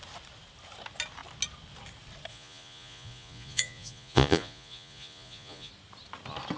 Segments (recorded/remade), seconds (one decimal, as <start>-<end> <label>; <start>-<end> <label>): 0.0-2.3 recorded; 2.3-5.7 remade; 5.7-6.6 recorded